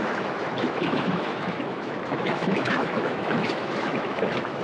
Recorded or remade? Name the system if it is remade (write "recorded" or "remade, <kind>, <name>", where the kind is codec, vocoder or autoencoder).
remade, autoencoder, DAC-VAE